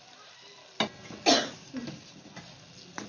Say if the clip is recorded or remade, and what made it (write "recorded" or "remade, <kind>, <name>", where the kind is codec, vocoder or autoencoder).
recorded